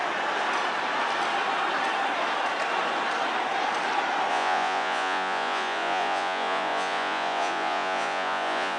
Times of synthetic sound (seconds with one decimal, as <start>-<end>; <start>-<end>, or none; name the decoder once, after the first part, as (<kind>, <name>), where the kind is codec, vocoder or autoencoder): 4.3-8.8 (vocoder, Vocos)